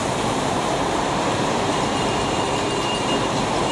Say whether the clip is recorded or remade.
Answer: remade